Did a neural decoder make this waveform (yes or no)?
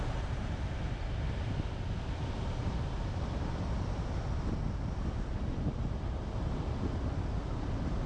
no